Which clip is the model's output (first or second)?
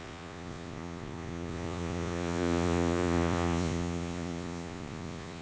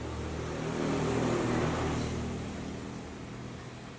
first